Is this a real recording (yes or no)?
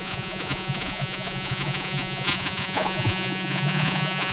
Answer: no